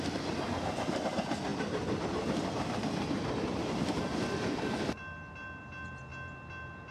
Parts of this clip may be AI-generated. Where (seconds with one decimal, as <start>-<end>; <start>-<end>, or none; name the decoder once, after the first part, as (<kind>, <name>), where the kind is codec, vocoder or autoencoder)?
1.5-5.6 (vocoder, BigVGAN v2)